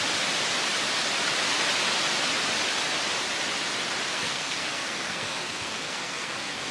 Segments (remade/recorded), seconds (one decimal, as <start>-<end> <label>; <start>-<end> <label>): 0.0-4.1 recorded; 4.1-6.7 remade